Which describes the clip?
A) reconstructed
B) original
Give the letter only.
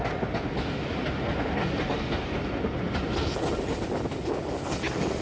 B